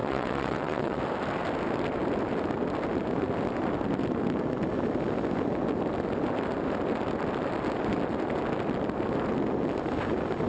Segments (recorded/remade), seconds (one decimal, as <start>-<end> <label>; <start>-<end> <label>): 0.0-1.0 remade; 1.0-10.5 recorded